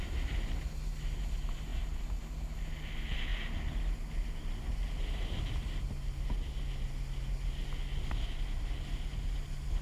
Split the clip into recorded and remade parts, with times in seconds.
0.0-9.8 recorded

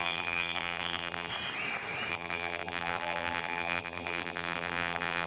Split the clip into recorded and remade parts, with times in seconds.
0.0-1.3 remade; 1.3-2.1 recorded; 2.1-5.3 remade

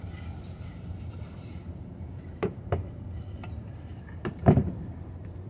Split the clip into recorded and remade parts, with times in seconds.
0.0-5.5 remade

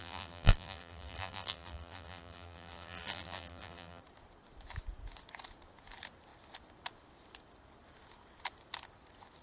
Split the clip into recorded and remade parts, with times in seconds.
0.0-4.0 remade; 4.0-9.4 recorded

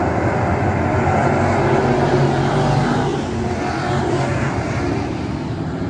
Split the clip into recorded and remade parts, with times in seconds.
0.0-3.1 recorded; 3.1-5.1 remade; 5.1-5.9 recorded

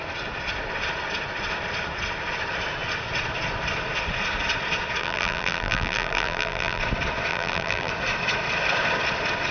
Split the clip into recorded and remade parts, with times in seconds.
0.0-5.0 recorded; 5.0-6.8 remade; 6.8-7.3 recorded; 7.3-7.9 remade; 7.9-9.5 recorded

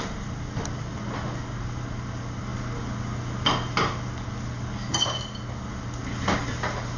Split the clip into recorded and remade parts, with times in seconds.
0.0-7.0 recorded

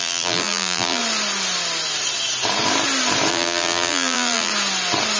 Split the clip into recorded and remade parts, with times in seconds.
0.0-1.0 remade; 1.0-3.3 recorded; 3.3-4.5 remade; 4.5-5.2 recorded